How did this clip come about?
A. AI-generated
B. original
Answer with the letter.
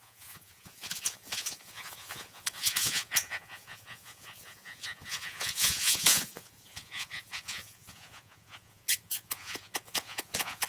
A